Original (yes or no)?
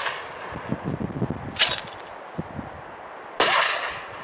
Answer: yes